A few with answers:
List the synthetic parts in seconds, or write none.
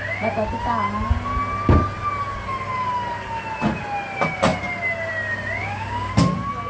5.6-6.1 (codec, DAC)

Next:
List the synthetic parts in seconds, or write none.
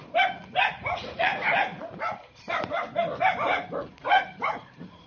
0.7-1.3 (vocoder, Vocos); 3.8-5.1